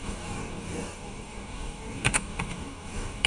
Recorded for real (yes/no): no